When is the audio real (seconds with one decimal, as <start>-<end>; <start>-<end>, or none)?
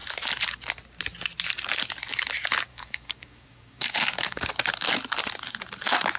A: 0.0-2.7; 4.4-6.2